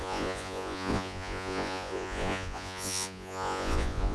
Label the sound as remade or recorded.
remade